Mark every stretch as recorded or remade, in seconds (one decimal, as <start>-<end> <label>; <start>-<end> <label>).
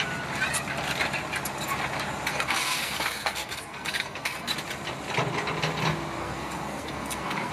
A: 0.0-2.3 recorded; 2.3-4.5 remade; 4.5-6.2 recorded; 6.2-7.5 remade